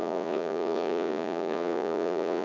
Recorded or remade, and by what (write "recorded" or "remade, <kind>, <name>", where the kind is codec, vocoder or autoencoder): remade, vocoder, Vocos